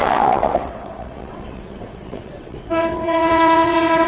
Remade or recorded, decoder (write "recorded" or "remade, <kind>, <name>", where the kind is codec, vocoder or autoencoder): remade, vocoder, WaveNeXt